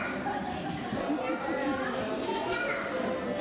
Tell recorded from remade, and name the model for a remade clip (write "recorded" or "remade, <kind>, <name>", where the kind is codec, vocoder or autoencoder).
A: recorded